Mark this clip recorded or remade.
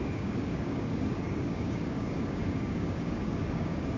remade